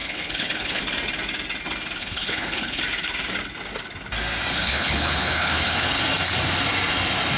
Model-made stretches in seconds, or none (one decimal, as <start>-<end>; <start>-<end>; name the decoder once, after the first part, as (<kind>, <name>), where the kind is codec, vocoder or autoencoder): 0.0-0.8 (codec, HILCodec); 2.0-2.8; 4.5-6.0